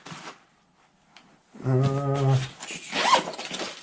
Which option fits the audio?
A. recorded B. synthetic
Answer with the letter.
A